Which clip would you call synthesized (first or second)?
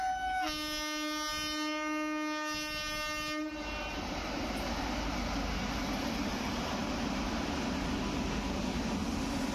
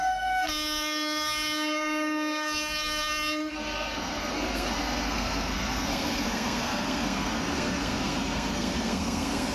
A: second